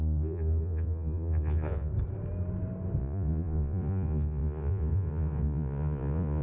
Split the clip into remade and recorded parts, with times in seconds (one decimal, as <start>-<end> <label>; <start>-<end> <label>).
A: 0.0-1.9 remade; 1.9-3.0 recorded; 3.0-6.4 remade